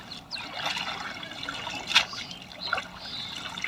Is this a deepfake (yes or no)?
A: no